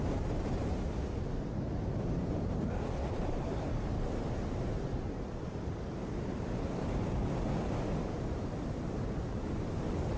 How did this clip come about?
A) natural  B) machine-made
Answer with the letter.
B